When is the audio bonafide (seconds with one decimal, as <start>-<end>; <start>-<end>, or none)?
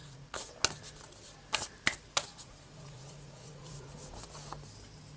0.5-2.3; 4.2-5.2